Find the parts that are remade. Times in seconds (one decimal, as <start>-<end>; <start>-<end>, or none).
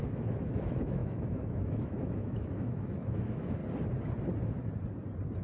0.0-3.6